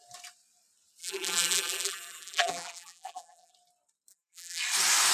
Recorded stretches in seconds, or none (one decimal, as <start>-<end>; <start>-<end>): 0.0-1.0; 3.5-4.1; 4.6-5.1